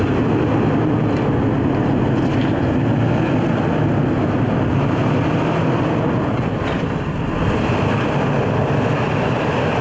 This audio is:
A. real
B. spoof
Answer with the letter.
A